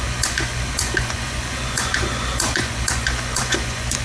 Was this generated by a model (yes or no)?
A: yes